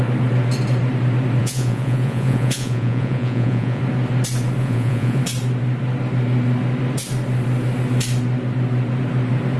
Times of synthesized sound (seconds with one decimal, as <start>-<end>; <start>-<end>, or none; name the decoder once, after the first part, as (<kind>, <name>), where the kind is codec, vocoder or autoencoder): 1.4-3.8 (vocoder, Vocos); 4.6-5.2